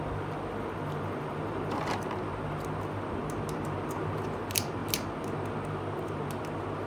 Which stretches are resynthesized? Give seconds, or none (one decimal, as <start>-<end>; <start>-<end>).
none